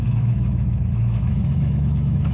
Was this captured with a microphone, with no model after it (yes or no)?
no